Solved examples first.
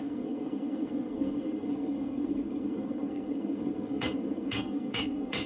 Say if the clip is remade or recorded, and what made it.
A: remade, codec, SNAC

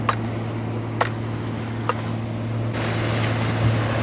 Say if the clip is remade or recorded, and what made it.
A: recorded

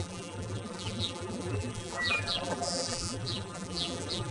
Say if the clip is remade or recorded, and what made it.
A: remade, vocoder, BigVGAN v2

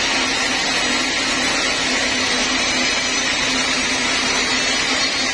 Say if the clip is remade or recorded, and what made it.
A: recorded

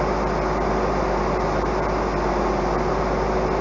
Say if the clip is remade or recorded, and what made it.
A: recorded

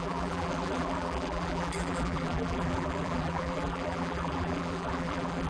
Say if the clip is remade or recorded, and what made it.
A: remade, vocoder, BigVGAN v2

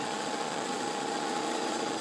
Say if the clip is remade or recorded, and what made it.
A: remade, vocoder, Vocos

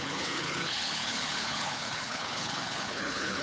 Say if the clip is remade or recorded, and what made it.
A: remade, codec, HILCodec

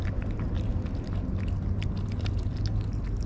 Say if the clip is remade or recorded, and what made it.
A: recorded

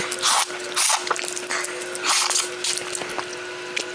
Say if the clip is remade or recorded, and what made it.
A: recorded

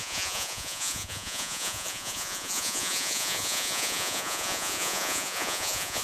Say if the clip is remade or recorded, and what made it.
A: remade, vocoder, Vocos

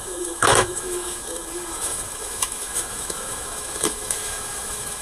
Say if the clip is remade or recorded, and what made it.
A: remade, autoencoder, DAC-VAE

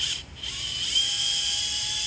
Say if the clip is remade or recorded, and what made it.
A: recorded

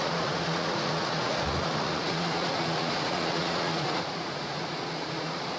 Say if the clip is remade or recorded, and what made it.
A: remade, vocoder, Vocos